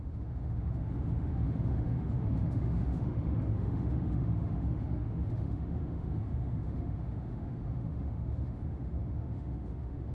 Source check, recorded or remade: remade